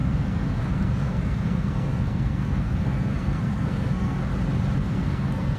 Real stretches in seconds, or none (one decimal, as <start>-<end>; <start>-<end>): 4.3-4.8